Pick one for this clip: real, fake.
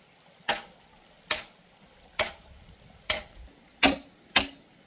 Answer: real